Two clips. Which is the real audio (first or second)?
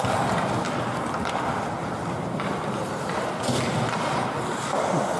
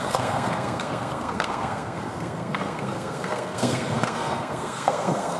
first